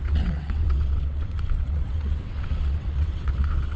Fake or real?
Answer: fake